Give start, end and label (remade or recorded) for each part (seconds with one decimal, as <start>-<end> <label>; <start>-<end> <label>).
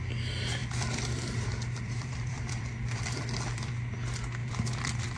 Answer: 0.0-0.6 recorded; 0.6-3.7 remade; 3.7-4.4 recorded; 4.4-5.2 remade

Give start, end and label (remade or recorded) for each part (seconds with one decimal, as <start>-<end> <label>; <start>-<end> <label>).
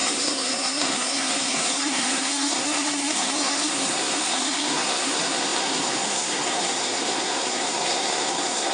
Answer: 0.0-8.7 remade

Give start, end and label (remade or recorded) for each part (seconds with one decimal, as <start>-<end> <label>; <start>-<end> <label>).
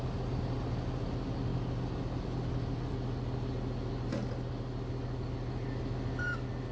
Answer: 0.0-6.7 recorded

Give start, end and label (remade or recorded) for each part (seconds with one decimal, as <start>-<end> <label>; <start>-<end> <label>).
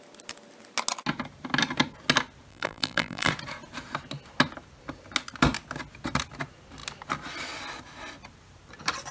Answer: 0.0-2.5 recorded; 2.5-3.3 remade; 3.3-9.1 recorded